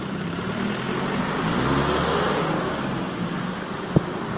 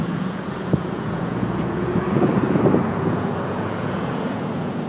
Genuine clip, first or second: first